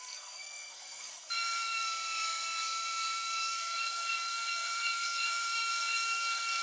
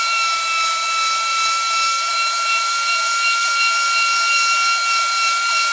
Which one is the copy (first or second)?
first